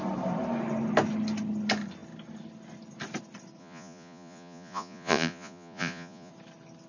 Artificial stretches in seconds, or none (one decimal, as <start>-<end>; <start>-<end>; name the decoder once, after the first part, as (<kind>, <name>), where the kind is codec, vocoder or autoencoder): 3.6-6.3 (vocoder, Vocos)